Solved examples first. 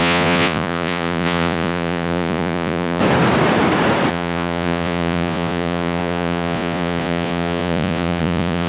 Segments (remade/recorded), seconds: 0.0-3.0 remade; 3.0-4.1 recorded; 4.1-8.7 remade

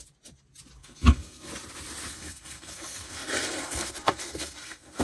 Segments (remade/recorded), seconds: 0.0-0.8 recorded; 0.8-1.5 remade; 1.5-2.1 recorded; 2.1-5.0 remade

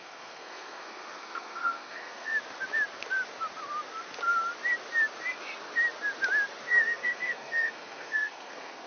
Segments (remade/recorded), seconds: 0.0-2.3 remade; 2.3-6.7 recorded; 6.7-8.9 remade

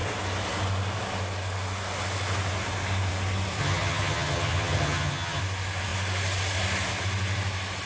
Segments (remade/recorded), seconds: 0.0-3.6 recorded; 3.6-5.4 remade; 5.4-7.9 recorded

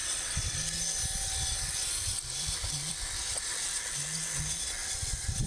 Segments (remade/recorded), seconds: 0.0-3.3 remade; 3.3-4.8 recorded; 4.8-5.5 remade

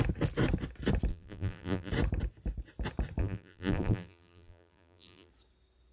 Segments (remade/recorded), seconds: 0.0-1.1 recorded; 1.1-1.9 remade; 1.9-3.2 recorded; 3.2-5.3 remade; 5.3-5.9 recorded

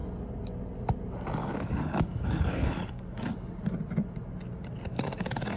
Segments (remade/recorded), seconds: 0.0-1.4 recorded; 1.4-3.0 remade; 3.0-4.9 recorded; 4.9-5.6 remade